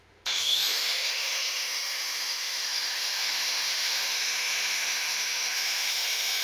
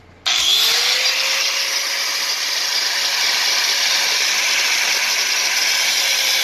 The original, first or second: second